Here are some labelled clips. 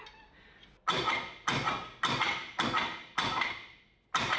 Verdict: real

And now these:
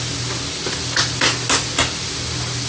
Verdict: real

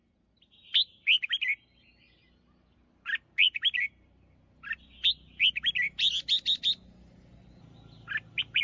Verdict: real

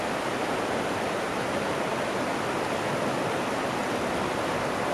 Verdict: real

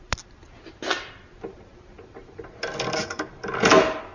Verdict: real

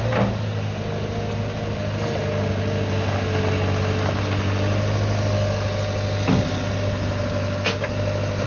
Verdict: real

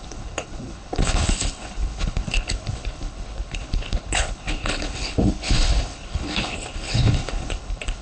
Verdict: fake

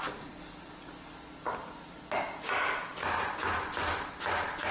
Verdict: real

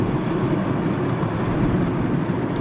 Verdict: real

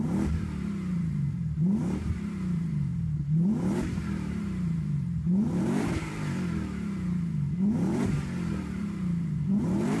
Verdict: fake